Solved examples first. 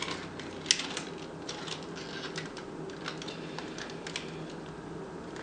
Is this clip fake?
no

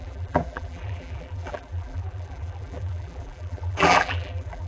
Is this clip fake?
yes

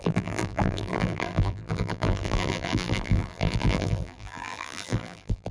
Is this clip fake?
yes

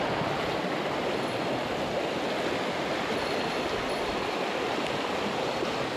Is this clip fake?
no